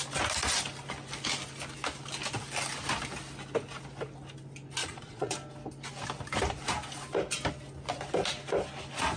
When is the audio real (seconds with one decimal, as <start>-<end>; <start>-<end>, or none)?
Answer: 0.0-4.8; 5.3-9.2